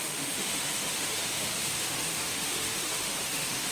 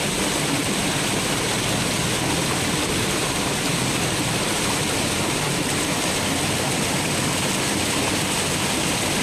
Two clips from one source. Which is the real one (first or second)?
second